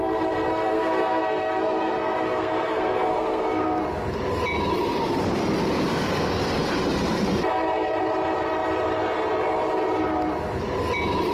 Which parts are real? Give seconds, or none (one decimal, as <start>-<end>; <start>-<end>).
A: 0.0-0.5; 3.8-11.3